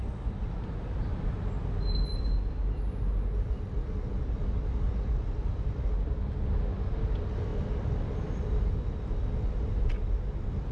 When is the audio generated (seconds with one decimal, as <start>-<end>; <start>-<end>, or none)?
none